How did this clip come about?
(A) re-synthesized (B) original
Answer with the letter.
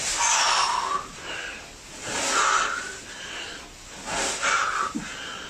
A